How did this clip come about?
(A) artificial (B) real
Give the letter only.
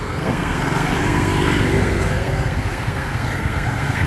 A